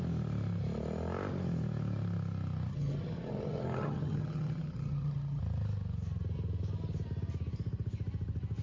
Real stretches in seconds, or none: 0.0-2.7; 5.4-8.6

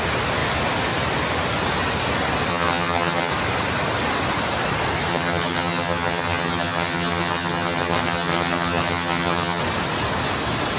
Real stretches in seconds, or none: 0.0-2.5; 3.3-5.1; 9.6-10.8

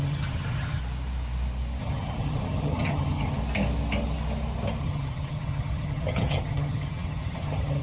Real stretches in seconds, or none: 0.8-1.8; 3.4-4.8

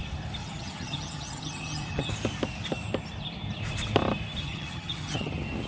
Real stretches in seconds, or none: 0.0-0.4; 2.1-4.4; 5.3-5.7

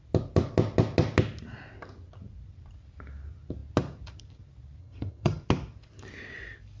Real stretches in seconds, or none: 0.0-4.8; 5.4-6.8

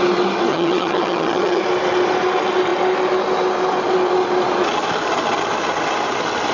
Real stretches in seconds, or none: 0.0-0.5; 1.6-6.5

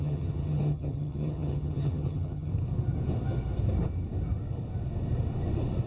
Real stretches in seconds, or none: 2.5-5.9

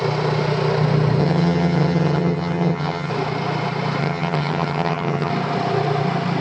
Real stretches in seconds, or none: 0.0-1.2; 3.1-4.0; 5.3-6.4